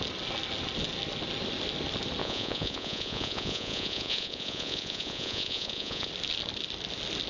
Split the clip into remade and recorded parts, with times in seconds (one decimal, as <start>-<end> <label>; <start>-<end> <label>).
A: 0.0-2.2 recorded; 2.2-6.1 remade; 6.1-7.3 recorded